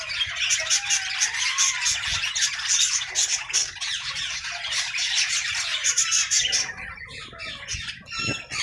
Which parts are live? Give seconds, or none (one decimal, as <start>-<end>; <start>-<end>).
0.0-3.6; 5.1-5.7; 7.5-8.6